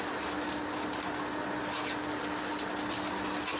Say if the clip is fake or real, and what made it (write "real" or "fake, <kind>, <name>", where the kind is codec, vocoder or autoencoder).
real